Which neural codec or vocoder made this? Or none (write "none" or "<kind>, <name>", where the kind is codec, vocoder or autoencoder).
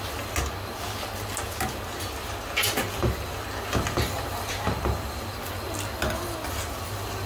none